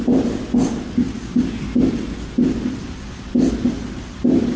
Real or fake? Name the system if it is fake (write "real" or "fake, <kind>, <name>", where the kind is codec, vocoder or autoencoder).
real